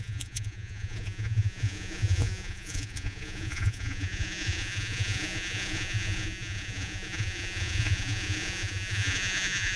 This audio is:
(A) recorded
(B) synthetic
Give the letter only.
B